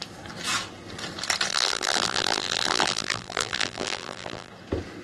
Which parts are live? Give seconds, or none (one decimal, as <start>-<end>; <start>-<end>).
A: 0.0-1.5; 4.5-5.0